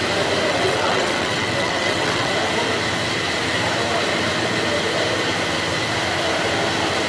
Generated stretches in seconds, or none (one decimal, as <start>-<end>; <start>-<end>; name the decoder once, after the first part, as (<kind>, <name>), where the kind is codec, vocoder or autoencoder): 0.5-2.3 (vocoder, WaveNeXt)